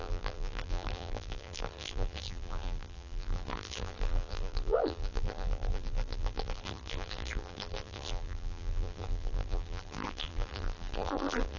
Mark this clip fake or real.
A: fake